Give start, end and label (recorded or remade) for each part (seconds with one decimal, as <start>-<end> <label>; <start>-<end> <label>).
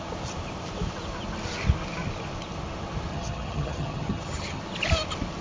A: 0.0-3.1 recorded; 3.1-4.6 remade; 4.6-5.4 recorded